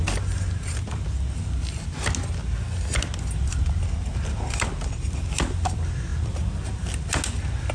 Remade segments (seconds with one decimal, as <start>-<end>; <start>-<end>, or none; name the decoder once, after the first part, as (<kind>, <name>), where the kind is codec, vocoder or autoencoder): none